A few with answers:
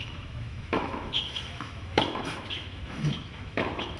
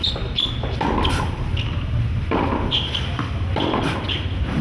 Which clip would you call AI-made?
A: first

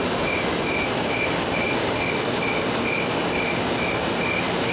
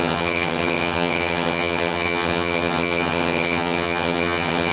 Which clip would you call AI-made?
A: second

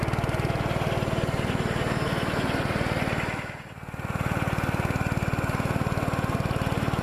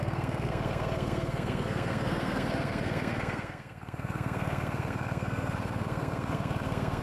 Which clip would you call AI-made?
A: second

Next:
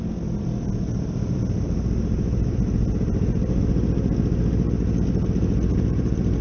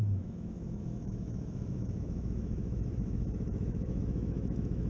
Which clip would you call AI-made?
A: second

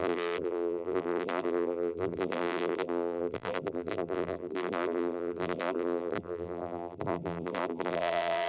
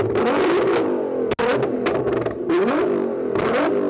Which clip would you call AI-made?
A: first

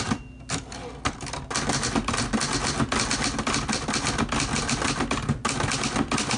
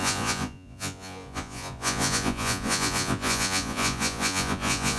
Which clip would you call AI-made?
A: second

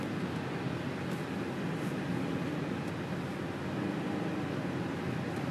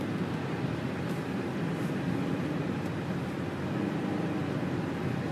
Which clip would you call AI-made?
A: second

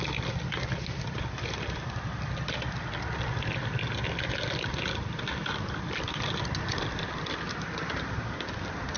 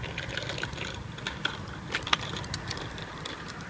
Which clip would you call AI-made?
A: second